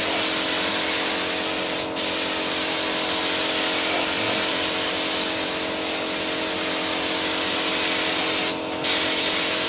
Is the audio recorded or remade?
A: recorded